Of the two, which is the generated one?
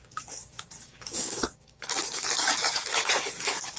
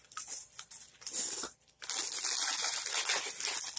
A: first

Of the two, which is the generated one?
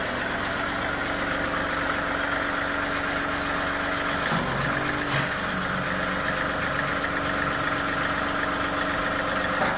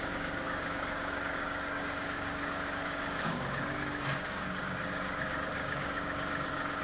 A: second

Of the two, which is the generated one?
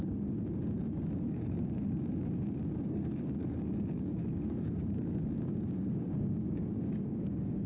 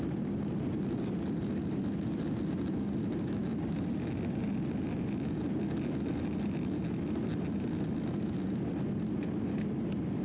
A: first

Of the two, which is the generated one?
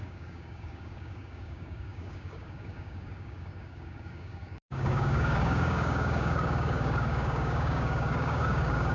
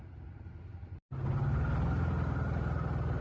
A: first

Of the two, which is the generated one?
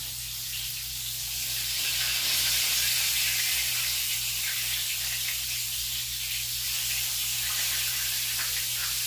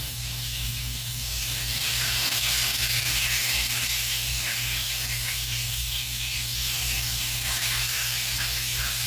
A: second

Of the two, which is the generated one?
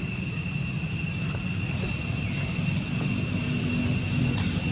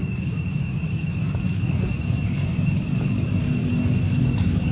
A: second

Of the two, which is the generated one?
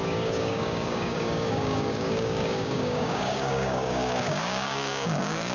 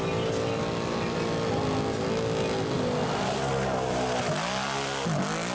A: first